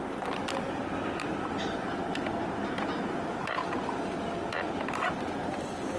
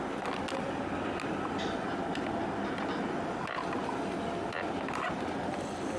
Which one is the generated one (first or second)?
first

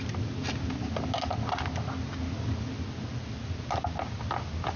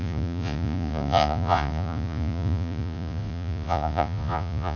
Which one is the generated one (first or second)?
second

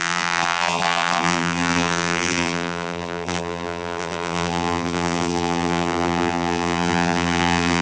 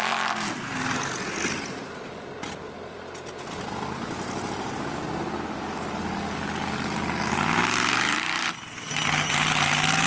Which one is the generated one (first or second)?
first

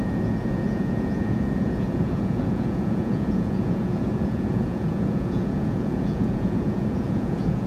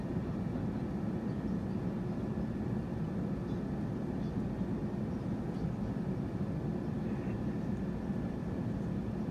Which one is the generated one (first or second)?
first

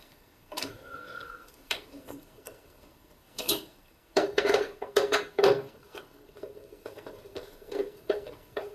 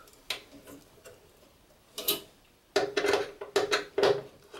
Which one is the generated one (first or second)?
first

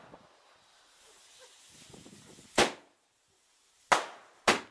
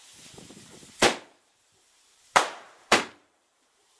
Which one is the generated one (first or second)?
second